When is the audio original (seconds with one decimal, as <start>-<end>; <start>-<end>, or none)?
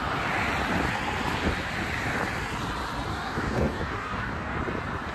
0.0-3.1; 4.6-5.1